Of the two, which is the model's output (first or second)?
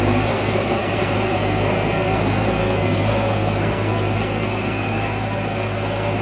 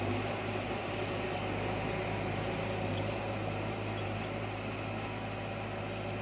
first